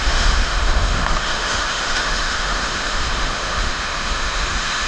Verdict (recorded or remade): remade